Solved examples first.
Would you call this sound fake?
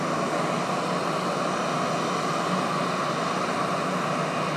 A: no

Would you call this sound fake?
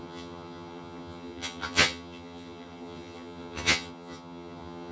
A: yes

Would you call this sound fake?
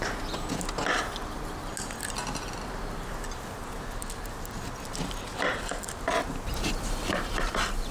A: no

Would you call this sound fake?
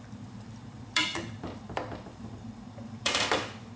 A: yes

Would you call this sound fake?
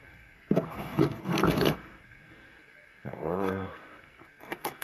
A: yes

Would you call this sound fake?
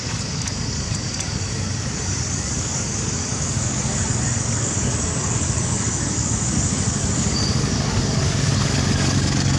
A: yes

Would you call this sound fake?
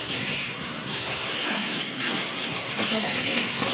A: yes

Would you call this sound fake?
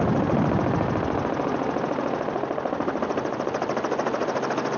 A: no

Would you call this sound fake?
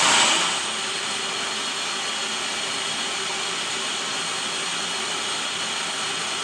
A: no